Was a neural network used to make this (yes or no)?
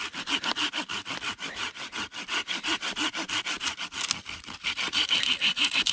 no